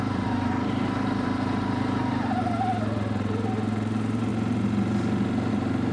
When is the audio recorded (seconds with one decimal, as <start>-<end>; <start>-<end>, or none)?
4.3-5.5